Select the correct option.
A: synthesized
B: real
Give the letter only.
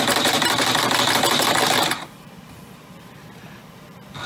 A